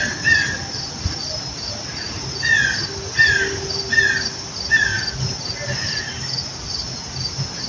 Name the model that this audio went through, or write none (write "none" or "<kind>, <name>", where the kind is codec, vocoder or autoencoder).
none